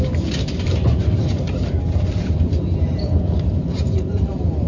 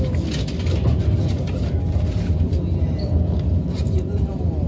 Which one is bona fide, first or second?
second